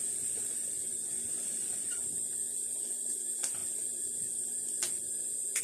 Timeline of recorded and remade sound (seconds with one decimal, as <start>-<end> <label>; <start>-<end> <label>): 0.0-5.6 recorded